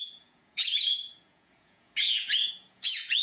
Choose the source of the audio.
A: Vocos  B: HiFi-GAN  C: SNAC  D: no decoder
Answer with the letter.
A